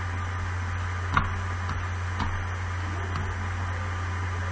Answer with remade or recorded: recorded